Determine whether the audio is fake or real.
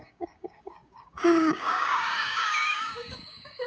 fake